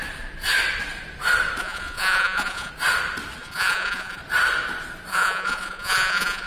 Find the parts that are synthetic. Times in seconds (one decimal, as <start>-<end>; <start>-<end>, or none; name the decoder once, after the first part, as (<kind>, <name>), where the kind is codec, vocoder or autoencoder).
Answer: 1.6-2.7 (vocoder, Vocos); 3.4-4.2; 5.1-6.5